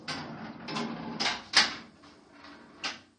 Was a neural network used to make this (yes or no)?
no